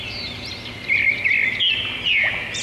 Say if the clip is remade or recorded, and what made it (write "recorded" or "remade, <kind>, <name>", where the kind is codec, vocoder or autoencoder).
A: recorded